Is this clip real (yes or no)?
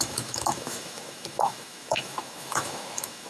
no